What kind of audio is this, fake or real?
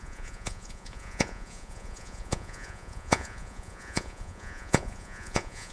fake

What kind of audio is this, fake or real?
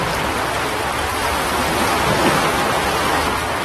real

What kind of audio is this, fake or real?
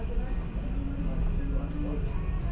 real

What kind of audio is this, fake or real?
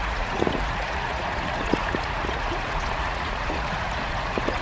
fake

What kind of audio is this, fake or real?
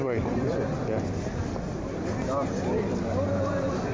real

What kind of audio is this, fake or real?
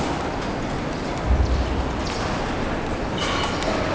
real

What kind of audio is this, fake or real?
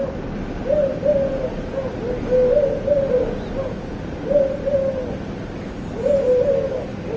real